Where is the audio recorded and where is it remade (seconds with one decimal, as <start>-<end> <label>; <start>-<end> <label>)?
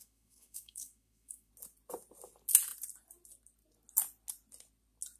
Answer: 0.0-1.5 remade; 1.5-5.2 recorded